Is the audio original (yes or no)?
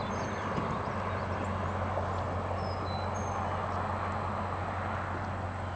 yes